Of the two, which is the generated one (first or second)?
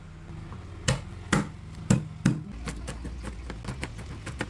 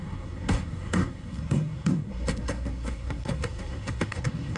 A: second